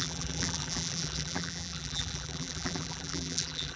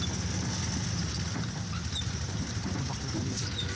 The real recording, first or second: second